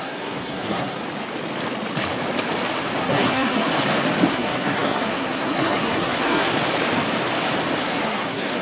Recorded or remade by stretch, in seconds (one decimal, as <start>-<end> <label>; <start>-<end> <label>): 0.0-1.0 remade; 1.0-3.0 recorded; 3.0-3.7 remade; 3.7-4.3 recorded; 4.3-6.5 remade; 6.5-7.8 recorded; 7.8-8.6 remade